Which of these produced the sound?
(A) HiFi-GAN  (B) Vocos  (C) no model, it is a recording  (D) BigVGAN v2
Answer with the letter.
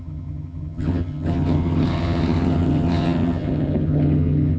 A